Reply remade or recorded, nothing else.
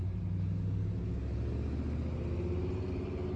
recorded